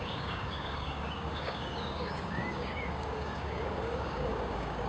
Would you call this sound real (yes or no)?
no